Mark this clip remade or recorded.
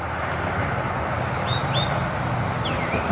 recorded